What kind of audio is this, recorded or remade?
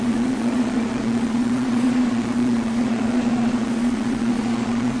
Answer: remade